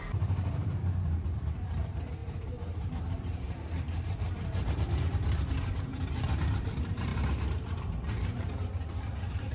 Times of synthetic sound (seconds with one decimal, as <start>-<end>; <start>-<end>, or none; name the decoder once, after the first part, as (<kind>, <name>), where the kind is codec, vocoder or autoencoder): 0.0-7.1 (vocoder, BigVGAN v2); 7.6-9.5